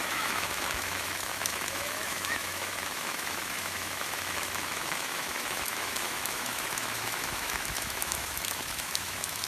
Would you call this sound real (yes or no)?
no